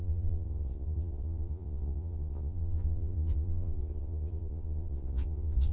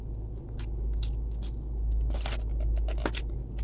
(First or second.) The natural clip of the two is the second